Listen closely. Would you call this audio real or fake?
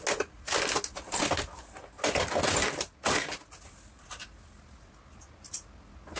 real